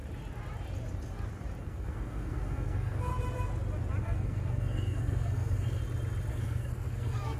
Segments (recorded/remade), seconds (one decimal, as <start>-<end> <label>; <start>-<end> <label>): 0.0-1.6 recorded; 1.6-3.1 remade; 3.1-4.0 recorded; 4.0-5.8 remade; 5.8-6.3 recorded; 6.3-7.4 remade